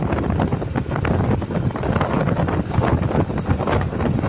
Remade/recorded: recorded